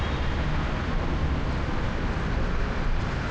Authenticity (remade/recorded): recorded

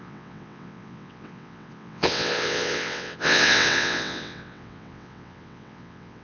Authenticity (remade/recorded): remade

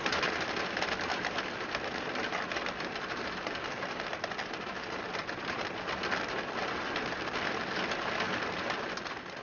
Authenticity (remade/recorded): recorded